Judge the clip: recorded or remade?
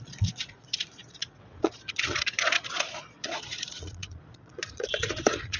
remade